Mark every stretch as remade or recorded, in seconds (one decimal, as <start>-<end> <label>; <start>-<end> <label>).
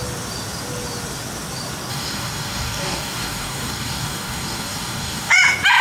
0.0-1.9 recorded; 1.9-5.3 remade; 5.3-5.8 recorded